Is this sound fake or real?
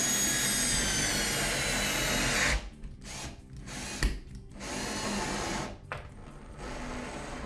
real